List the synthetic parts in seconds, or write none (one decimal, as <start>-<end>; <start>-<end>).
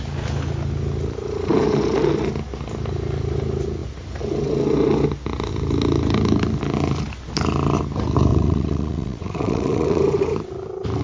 8.3-10.0